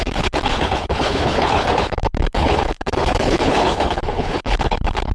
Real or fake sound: fake